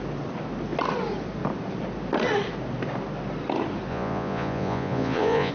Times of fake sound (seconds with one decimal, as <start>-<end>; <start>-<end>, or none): 3.9-5.5